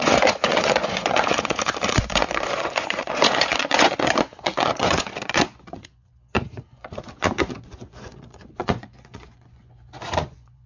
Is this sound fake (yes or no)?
yes